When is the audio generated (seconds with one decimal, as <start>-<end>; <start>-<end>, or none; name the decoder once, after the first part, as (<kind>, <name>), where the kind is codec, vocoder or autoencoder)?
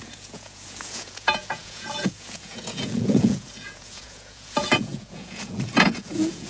0.0-6.5 (vocoder, Vocos)